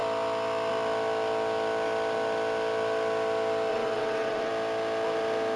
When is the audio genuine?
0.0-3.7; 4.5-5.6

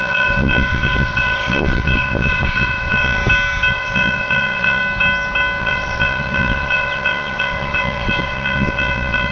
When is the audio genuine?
3.2-3.7; 4.8-5.6

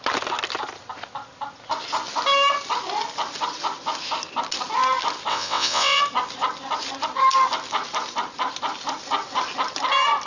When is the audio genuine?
0.0-5.3; 6.0-10.3

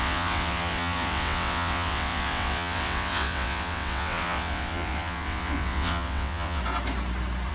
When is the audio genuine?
6.6-7.5